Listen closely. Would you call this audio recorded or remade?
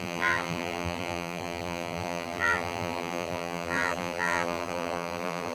remade